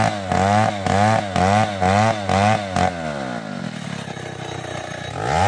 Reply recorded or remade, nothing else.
recorded